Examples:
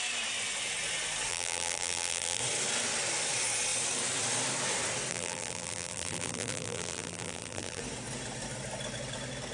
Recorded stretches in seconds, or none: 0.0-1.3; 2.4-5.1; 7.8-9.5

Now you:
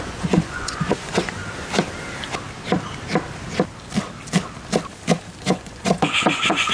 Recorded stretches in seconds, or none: 1.4-5.4

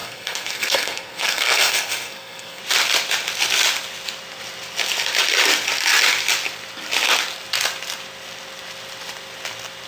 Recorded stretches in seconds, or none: 2.6-9.9

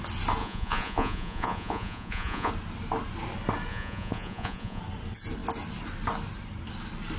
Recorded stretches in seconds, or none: 0.0-0.4; 2.5-3.7; 4.8-7.2